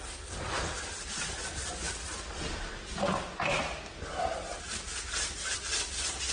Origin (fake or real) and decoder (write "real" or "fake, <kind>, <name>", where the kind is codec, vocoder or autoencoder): real